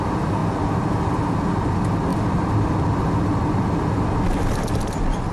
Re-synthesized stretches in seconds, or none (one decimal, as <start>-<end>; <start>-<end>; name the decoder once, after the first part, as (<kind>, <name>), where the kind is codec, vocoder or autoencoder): none